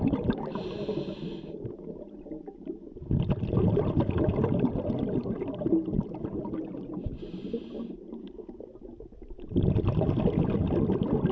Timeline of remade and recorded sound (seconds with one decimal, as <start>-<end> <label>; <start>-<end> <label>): 0.0-11.3 recorded